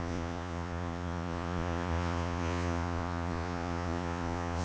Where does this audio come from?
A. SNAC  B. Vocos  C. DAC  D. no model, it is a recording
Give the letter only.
B